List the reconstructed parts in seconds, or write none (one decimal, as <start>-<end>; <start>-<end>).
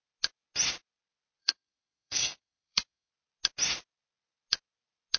1.4-3.1